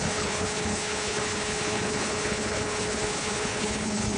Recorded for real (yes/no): no